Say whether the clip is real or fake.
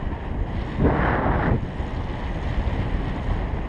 real